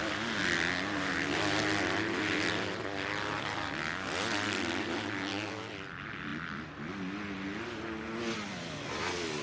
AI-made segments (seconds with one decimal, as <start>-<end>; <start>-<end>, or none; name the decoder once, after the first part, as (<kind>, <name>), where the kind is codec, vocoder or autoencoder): none